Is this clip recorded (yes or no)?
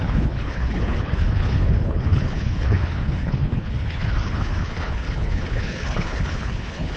no